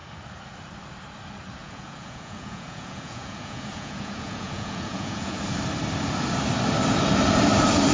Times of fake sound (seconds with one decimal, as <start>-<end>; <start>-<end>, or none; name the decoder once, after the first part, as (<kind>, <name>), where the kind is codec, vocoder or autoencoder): 1.6-5.4 (vocoder, Vocos)